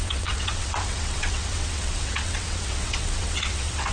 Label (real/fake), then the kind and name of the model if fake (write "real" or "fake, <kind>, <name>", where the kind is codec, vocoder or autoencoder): fake, vocoder, WaveNeXt